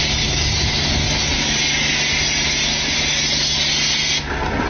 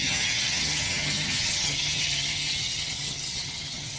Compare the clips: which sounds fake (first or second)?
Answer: second